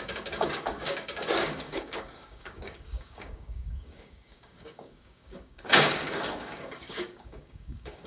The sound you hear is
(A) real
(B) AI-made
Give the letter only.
B